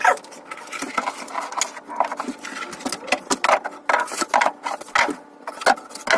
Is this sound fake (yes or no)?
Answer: no